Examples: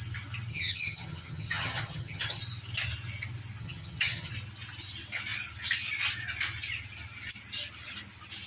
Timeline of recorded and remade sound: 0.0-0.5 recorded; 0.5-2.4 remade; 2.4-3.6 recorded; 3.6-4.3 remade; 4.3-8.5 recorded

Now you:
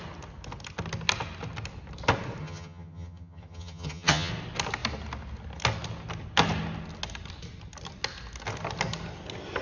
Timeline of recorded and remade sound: 0.0-2.4 recorded; 2.4-4.3 remade; 4.3-9.6 recorded

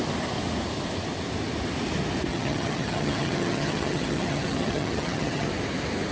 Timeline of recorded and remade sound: 0.0-2.3 recorded; 2.3-5.5 remade; 5.5-6.1 recorded